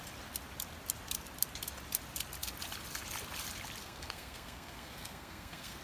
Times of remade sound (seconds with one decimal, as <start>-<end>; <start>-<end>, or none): 3.8-5.8